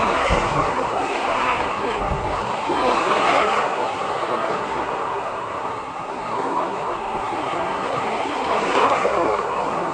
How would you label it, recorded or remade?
remade